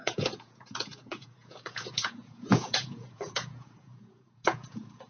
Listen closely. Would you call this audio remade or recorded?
remade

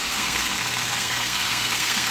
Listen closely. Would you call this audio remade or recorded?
remade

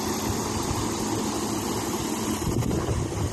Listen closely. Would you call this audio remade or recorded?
recorded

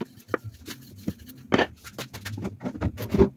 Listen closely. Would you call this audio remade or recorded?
recorded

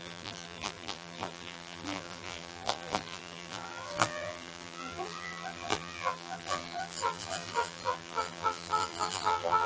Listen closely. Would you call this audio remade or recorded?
remade